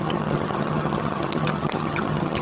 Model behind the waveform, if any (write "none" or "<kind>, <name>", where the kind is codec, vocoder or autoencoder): vocoder, HiFi-GAN